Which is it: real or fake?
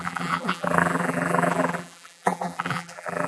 fake